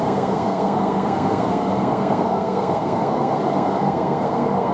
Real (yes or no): no